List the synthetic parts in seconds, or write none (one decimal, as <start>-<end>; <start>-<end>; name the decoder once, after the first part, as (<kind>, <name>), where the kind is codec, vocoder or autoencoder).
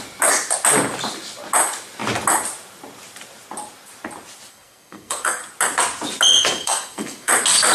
4.5-5.4 (codec, SNAC); 6.6-7.3